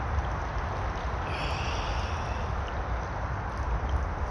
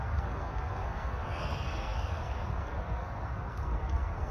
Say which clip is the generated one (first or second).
second